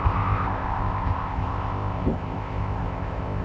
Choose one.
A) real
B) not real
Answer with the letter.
B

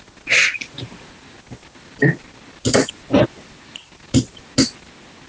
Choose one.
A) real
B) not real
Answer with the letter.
A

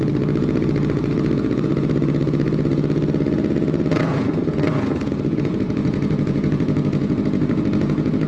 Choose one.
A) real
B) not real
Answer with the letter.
B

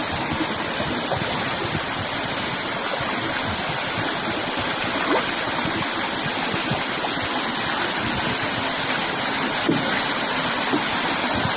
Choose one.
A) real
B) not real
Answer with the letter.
A